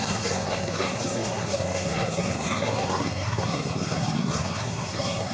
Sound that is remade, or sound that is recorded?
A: remade